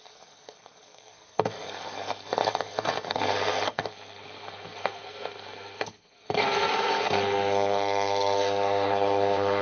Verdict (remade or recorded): remade